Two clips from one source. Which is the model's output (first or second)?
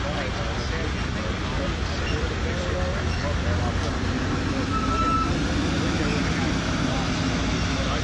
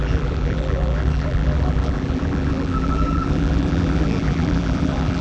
second